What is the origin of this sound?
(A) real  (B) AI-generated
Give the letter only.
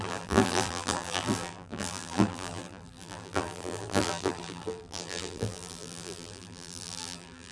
B